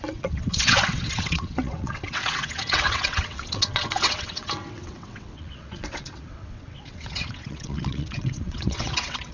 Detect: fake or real fake